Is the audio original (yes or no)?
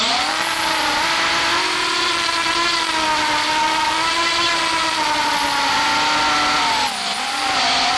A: yes